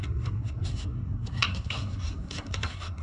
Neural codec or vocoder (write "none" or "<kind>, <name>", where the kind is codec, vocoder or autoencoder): codec, SNAC